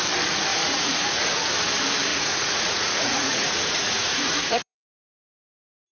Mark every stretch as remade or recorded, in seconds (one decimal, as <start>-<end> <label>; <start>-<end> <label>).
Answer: 0.0-0.5 recorded; 0.5-1.3 remade; 1.3-2.1 recorded; 2.1-5.9 remade